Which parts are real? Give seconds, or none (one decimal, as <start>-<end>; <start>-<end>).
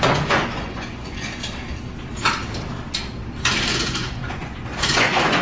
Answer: 1.4-3.7